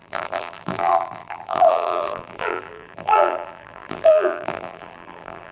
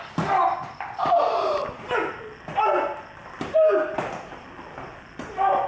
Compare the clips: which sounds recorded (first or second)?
second